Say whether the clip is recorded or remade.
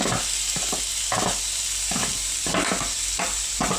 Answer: recorded